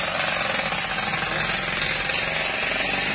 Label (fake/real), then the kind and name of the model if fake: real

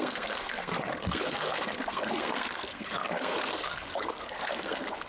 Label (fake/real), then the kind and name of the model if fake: fake, codec, SNAC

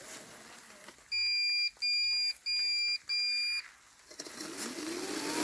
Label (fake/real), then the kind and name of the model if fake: real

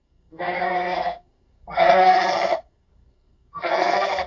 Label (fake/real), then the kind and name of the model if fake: fake, codec, SNAC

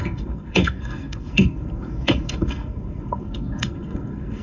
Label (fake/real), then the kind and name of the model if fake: fake, codec, SNAC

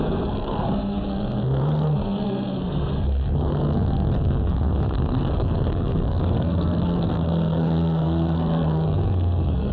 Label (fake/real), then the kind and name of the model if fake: fake, codec, SNAC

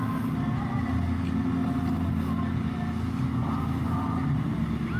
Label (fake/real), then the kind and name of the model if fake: real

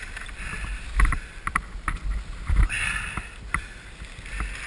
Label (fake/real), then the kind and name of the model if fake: real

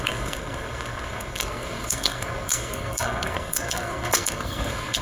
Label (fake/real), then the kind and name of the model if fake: fake, codec, SNAC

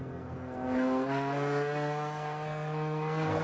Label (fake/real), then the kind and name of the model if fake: fake, codec, SNAC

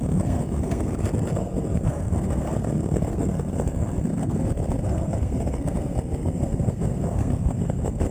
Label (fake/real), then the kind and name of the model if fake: fake, codec, SNAC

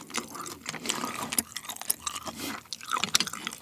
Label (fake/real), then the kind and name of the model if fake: real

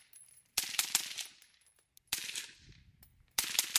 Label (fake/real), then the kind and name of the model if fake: real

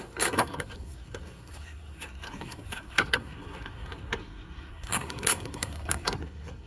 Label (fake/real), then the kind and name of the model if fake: fake, codec, SNAC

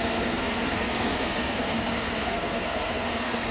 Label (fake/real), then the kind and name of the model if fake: fake, codec, SNAC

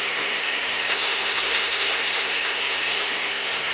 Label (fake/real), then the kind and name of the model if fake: fake, codec, SNAC